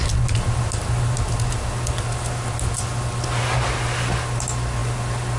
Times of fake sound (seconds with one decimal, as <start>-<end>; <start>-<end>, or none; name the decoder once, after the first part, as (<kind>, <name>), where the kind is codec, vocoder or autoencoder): none